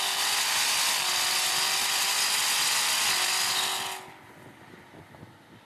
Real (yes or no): yes